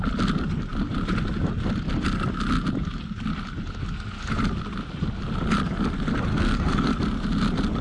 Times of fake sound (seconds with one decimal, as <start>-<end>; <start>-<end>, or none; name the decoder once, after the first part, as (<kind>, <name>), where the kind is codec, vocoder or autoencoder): 6.3-6.9 (codec, SNAC)